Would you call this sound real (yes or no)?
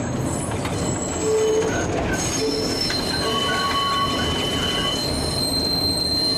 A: yes